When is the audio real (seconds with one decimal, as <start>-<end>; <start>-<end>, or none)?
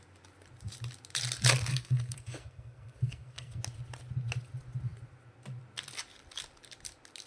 0.0-1.7; 3.6-7.3